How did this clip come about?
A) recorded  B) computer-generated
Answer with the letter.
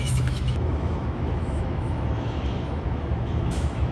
B